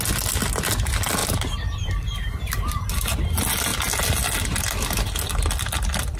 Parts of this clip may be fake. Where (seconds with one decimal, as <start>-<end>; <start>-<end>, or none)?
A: 1.2-2.9